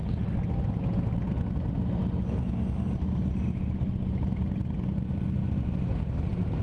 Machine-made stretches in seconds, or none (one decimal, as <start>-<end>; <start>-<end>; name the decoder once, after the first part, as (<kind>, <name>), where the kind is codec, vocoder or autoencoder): none